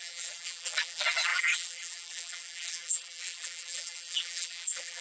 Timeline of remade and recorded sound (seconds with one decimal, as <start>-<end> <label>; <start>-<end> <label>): 0.0-5.0 remade